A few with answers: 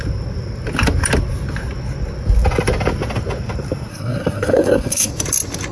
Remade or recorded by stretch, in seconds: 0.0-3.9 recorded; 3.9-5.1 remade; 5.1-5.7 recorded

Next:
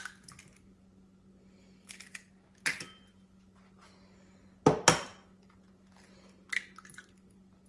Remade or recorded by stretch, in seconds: 0.0-7.7 recorded

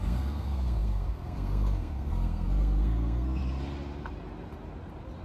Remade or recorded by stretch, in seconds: 0.0-3.4 remade; 3.4-5.2 recorded

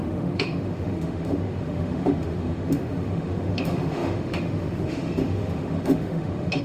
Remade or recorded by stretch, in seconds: 0.0-6.6 remade

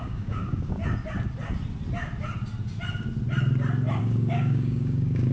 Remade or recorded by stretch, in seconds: 0.0-0.8 remade; 0.8-4.0 recorded; 4.0-5.3 remade

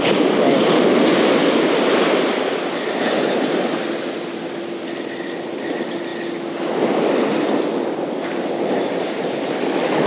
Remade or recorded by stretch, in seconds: 0.0-10.1 recorded